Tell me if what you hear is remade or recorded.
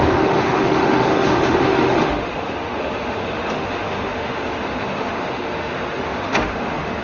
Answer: remade